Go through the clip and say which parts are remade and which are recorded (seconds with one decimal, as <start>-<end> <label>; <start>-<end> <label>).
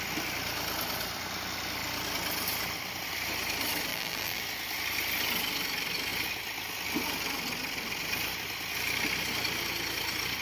0.0-3.9 recorded; 3.9-4.4 remade; 4.4-10.4 recorded